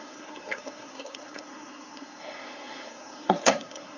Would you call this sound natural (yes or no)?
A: no